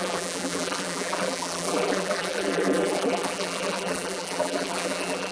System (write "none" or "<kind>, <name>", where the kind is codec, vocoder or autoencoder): vocoder, BigVGAN v2